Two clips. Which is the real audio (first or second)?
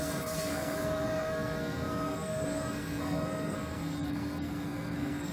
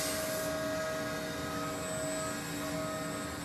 second